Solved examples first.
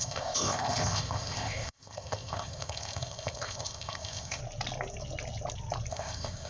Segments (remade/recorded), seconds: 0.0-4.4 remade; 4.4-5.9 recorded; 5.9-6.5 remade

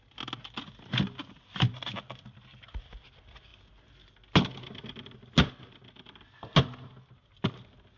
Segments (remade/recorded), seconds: 0.0-8.0 recorded

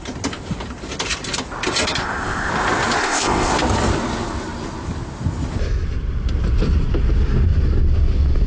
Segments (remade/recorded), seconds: 0.0-2.0 recorded; 2.0-2.5 remade; 2.5-3.0 recorded; 3.0-3.5 remade; 3.5-8.5 recorded

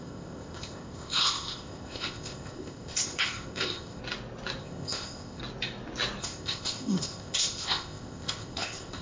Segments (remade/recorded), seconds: 0.0-4.0 remade; 4.0-4.6 recorded; 4.6-5.4 remade; 5.4-6.2 recorded; 6.2-9.0 remade

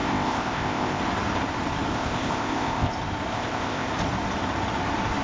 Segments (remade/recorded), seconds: 0.0-1.0 remade; 1.0-1.9 recorded; 1.9-2.9 remade; 2.9-3.3 recorded; 3.3-3.9 remade; 3.9-5.2 recorded

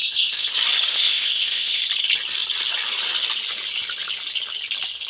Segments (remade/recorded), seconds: 0.0-0.5 remade; 0.5-0.9 recorded; 0.9-1.8 remade; 1.8-5.1 recorded

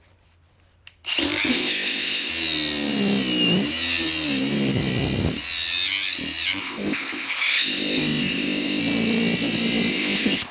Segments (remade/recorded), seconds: 0.0-1.5 recorded; 1.5-2.3 remade; 2.3-6.6 recorded; 6.6-8.8 remade; 8.8-9.9 recorded; 9.9-10.5 remade